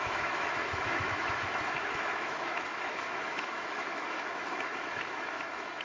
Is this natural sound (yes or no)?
no